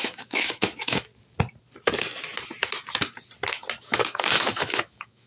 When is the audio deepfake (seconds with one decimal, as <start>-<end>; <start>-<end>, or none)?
0.0-1.1; 3.8-5.3